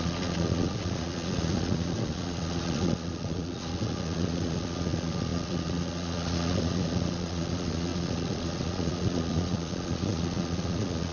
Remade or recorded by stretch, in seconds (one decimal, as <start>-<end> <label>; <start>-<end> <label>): 0.0-11.1 remade